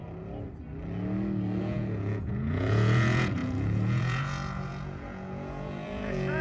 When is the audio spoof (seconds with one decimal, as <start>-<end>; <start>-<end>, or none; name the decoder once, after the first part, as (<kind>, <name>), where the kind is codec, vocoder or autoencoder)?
1.6-6.4 (vocoder, Vocos)